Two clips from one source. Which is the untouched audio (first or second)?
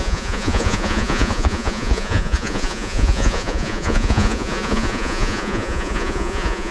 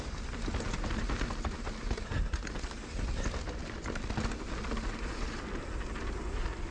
second